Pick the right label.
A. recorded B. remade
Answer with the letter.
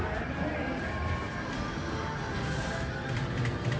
A